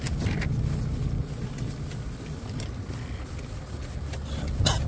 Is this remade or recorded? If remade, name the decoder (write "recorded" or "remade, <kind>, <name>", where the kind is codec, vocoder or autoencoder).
recorded